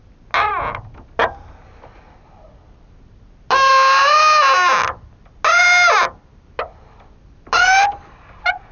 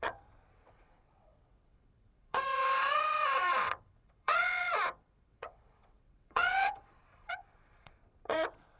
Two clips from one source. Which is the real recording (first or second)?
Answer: first